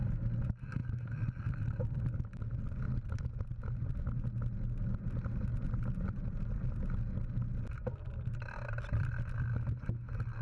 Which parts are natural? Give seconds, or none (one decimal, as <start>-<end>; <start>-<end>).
0.0-10.4